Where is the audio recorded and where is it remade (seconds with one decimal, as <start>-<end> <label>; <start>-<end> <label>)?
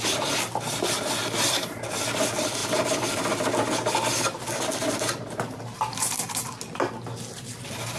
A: 0.0-2.6 recorded; 2.6-3.2 remade; 3.2-8.0 recorded